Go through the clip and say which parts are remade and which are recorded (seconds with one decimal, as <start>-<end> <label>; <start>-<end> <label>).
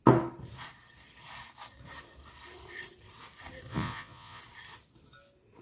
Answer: 0.0-3.7 recorded; 3.7-4.4 remade; 4.4-5.6 recorded